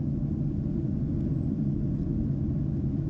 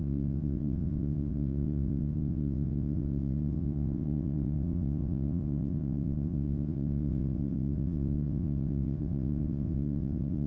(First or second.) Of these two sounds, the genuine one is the first